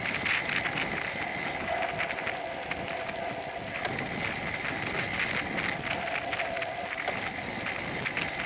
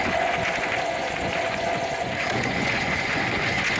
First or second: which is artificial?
second